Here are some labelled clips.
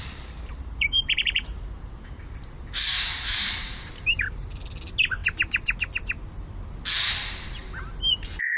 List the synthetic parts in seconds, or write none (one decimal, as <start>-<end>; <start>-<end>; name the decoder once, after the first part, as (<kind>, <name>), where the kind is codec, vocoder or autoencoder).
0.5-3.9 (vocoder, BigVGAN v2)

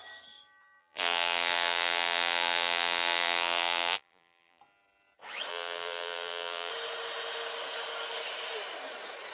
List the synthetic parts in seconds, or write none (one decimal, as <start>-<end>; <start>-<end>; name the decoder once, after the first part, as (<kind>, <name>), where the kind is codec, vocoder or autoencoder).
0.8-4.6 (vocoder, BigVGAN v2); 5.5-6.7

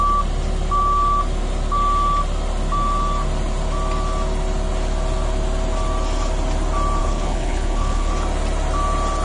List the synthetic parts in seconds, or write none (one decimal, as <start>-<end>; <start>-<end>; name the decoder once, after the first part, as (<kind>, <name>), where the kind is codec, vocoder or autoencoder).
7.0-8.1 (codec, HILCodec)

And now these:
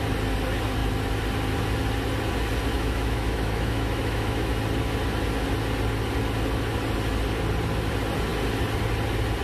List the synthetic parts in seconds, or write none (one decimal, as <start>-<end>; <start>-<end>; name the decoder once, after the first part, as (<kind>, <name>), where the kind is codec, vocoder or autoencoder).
2.7-4.6 (autoencoder, DAC-VAE)

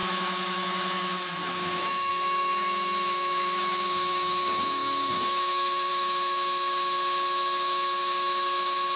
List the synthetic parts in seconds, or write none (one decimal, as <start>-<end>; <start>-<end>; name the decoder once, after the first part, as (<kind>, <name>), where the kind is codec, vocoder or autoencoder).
0.0-9.0 (autoencoder, DAC-VAE)